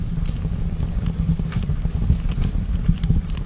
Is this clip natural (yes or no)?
no